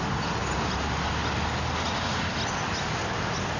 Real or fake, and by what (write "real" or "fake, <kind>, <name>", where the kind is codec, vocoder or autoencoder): real